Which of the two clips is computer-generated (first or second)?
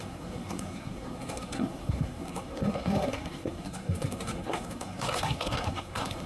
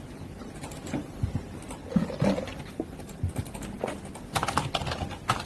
first